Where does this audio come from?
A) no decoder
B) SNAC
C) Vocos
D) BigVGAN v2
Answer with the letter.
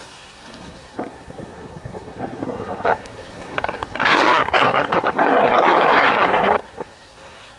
B